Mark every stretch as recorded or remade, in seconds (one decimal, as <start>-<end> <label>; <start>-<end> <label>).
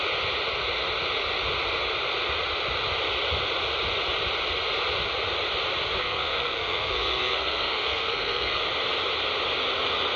0.0-6.0 recorded; 6.0-8.6 remade; 8.6-10.2 recorded